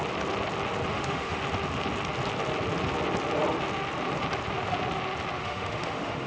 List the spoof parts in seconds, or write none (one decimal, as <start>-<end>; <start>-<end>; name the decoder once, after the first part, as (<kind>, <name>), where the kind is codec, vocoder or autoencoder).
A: 0.9-1.4 (autoencoder, DAC-VAE); 5.4-6.3